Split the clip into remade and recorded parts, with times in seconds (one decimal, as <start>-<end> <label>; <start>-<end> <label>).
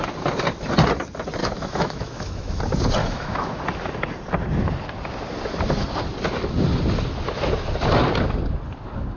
0.0-1.4 recorded; 1.4-2.6 remade; 2.6-3.0 recorded; 3.0-3.6 remade; 3.6-9.2 recorded